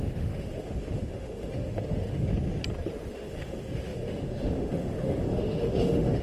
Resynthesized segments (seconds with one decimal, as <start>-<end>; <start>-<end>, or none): 0.0-2.3; 3.1-6.2